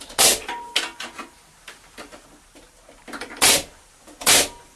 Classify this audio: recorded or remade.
recorded